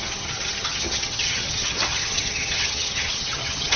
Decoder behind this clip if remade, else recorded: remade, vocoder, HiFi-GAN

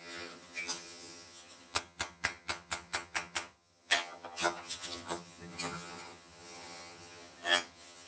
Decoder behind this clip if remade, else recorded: remade, vocoder, HiFi-GAN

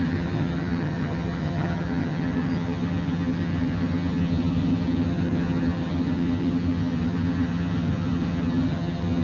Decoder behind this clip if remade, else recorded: remade, vocoder, HiFi-GAN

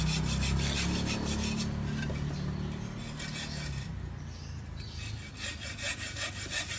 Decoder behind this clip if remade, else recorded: recorded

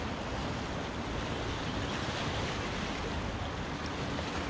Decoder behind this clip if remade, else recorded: recorded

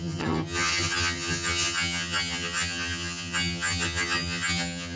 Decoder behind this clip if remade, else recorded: remade, vocoder, HiFi-GAN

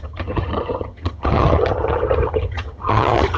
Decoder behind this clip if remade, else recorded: remade, vocoder, HiFi-GAN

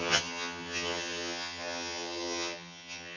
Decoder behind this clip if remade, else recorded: remade, vocoder, HiFi-GAN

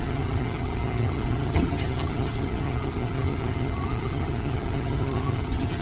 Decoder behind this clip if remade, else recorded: remade, vocoder, HiFi-GAN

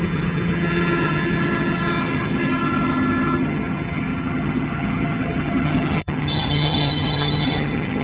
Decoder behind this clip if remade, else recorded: remade, vocoder, HiFi-GAN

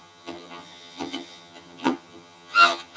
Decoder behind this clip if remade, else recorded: remade, vocoder, HiFi-GAN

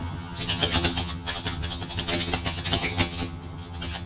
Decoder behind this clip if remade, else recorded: remade, vocoder, HiFi-GAN